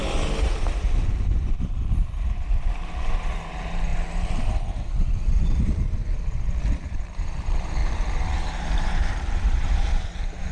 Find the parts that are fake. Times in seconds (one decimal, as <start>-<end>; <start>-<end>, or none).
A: 0.7-10.5